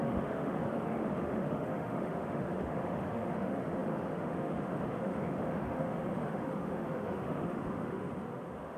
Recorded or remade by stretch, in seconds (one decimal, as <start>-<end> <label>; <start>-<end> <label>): 0.0-8.8 remade